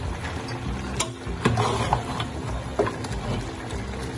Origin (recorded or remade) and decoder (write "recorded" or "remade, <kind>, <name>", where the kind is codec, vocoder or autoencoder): recorded